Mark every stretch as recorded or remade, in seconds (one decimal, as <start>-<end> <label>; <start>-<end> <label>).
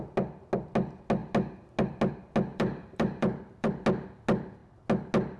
0.0-2.5 recorded; 2.5-3.7 remade; 3.7-5.4 recorded